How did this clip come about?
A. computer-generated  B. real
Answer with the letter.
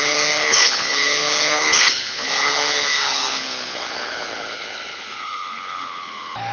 A